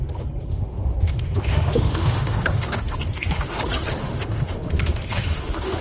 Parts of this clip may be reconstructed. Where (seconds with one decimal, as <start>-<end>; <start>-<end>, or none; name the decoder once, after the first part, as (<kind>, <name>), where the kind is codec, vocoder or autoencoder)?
0.5-3.6 (autoencoder, DAC-VAE); 4.0-5.8